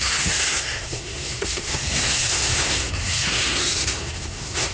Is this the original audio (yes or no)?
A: no